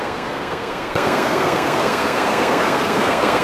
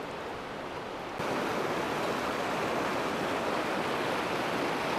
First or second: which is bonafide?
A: second